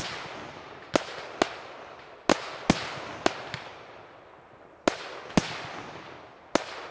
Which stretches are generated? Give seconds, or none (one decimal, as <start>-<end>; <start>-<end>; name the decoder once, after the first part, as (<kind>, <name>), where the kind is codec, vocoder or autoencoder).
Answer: none